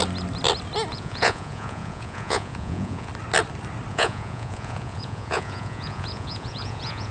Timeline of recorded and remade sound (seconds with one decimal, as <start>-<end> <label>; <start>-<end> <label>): 0.0-0.9 recorded; 0.9-3.1 remade; 3.1-3.9 recorded; 3.9-7.1 remade